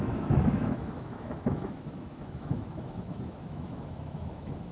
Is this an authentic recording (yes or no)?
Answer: no